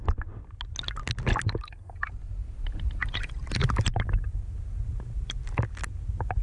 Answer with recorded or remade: recorded